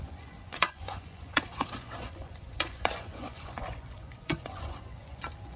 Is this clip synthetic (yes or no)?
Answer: yes